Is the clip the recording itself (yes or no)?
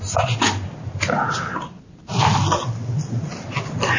yes